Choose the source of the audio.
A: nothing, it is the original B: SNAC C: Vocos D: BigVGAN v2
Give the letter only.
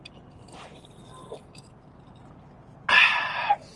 A